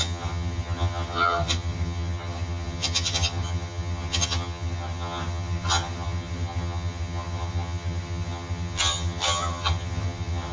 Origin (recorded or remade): remade